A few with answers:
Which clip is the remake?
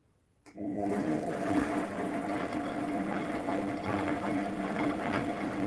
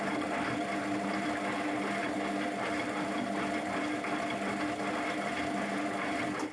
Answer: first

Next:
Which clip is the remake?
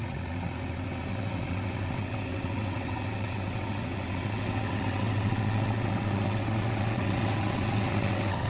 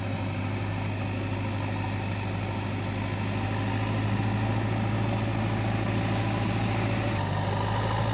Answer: first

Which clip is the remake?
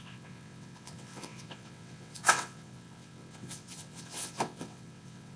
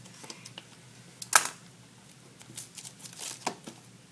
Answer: first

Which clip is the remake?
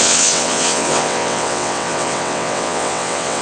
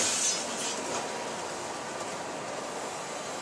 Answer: first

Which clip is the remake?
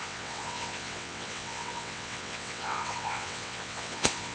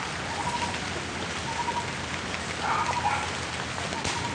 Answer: first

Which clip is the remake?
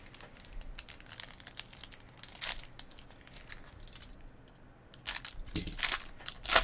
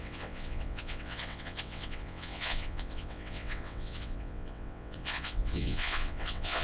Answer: second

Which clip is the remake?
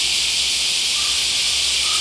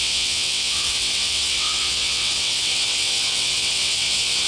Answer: second